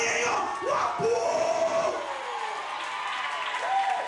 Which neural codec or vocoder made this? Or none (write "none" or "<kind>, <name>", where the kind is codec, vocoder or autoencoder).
none